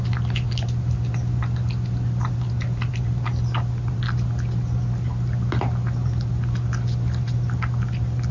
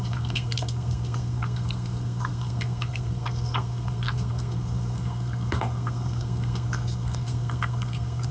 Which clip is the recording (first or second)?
first